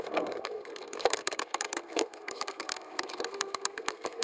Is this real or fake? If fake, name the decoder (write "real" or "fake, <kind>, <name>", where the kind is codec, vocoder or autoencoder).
fake, codec, SNAC